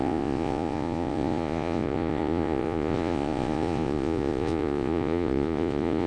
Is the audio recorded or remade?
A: remade